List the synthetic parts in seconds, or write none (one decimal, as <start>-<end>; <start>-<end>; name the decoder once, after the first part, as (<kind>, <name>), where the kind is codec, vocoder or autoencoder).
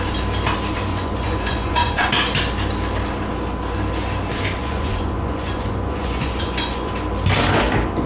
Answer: 0.9-2.1 (vocoder, Vocos); 4.6-6.9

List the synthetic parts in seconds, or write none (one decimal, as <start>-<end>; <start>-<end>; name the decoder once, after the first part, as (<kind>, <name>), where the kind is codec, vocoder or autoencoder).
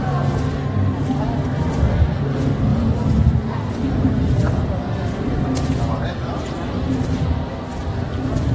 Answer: 2.7-3.4 (vocoder, BigVGAN v2)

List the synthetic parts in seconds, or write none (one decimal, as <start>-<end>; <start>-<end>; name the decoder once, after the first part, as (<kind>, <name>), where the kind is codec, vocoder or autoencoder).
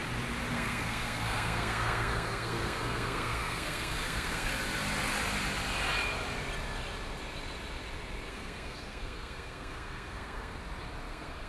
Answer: 0.5-4.5 (codec, SNAC); 8.3-10.6; 11.1-11.5